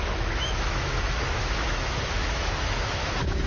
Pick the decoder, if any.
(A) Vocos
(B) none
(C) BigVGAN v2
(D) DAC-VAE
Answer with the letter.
D